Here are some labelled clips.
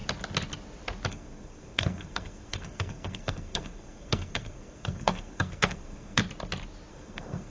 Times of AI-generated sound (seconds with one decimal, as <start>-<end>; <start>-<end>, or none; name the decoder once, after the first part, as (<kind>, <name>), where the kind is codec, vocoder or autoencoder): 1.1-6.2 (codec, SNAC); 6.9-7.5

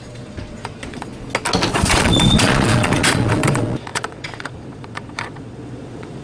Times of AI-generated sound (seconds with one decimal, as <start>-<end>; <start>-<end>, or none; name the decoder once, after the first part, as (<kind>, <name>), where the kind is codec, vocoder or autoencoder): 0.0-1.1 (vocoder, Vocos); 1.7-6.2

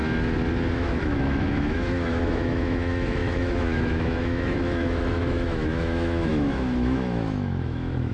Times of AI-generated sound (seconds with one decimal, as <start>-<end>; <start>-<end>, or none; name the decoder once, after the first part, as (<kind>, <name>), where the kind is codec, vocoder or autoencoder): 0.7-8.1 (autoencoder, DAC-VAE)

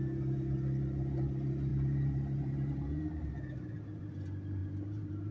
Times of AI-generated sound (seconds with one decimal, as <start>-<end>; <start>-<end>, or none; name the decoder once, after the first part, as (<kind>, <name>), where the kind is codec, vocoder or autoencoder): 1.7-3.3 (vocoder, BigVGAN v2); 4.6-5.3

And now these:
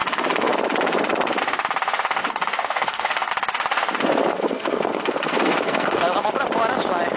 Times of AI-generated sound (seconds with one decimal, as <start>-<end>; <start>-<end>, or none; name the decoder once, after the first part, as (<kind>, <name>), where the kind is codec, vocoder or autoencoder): 2.2-3.3 (codec, SNAC); 4.3-6.0

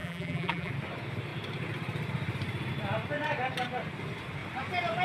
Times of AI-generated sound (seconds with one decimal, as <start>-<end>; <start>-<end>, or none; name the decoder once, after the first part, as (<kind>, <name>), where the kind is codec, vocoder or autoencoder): 0.0-0.7 (vocoder, BigVGAN v2)

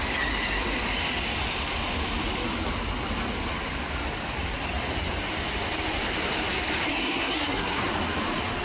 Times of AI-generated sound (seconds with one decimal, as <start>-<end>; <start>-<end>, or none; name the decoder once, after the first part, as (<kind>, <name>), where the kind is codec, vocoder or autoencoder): 6.9-7.8 (codec, SNAC)